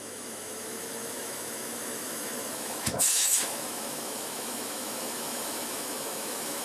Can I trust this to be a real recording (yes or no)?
no